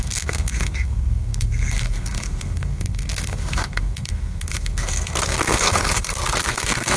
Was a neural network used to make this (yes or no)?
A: yes